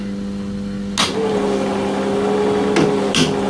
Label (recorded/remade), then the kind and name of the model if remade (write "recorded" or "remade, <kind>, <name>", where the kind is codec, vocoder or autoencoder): recorded